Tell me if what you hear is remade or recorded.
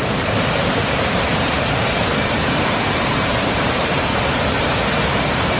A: remade